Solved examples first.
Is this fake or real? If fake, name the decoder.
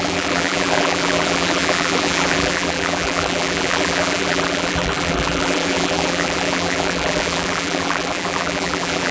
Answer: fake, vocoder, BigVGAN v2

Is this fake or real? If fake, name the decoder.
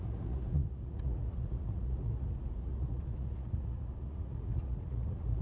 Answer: fake, vocoder, Vocos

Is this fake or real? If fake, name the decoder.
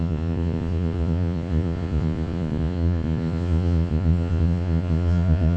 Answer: fake, vocoder, Vocos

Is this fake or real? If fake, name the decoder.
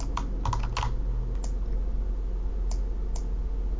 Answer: real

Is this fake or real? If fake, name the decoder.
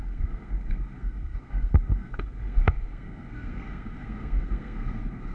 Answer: fake, codec, SNAC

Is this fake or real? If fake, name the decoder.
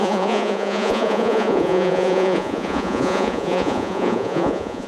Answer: fake, vocoder, Vocos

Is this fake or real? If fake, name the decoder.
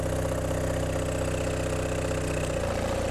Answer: real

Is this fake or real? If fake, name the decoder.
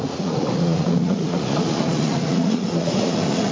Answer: fake, vocoder, Vocos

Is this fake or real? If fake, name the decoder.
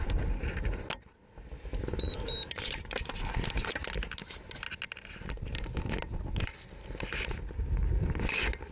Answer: real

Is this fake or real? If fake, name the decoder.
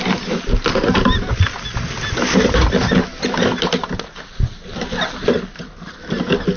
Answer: real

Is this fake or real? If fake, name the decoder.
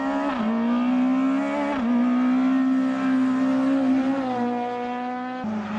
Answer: real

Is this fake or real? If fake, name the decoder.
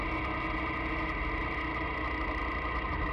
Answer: real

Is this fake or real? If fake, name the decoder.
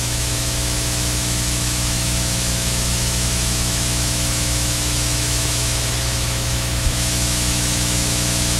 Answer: fake, autoencoder, DAC-VAE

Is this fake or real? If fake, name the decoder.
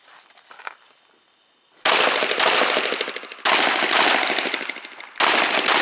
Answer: real